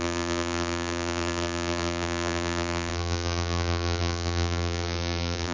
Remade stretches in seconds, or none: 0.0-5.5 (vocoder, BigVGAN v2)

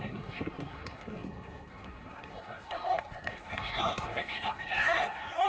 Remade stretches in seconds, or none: 0.0-5.5 (codec, SNAC)

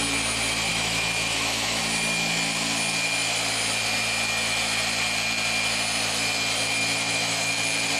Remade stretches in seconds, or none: 0.7-1.8 (autoencoder, DAC-VAE); 6.8-7.5

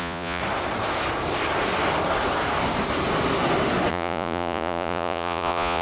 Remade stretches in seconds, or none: 0.0-0.4 (vocoder, Vocos); 3.9-5.8